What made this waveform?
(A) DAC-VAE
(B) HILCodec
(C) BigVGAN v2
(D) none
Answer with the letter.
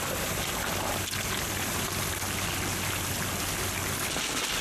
D